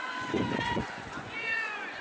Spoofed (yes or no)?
yes